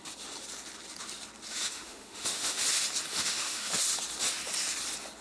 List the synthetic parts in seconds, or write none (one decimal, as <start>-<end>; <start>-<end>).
1.5-2.6; 3.1-3.8